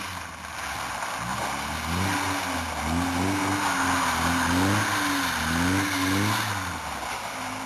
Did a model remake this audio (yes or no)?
no